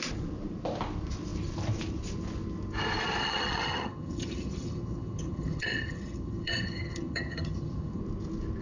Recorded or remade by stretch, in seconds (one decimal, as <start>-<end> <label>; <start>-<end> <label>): 0.0-3.2 recorded; 3.2-8.0 remade; 8.0-8.6 recorded